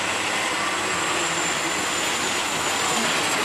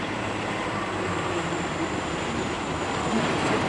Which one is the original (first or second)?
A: first